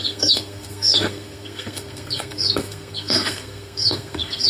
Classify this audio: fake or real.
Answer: fake